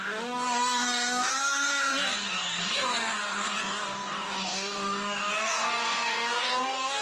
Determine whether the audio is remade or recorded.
remade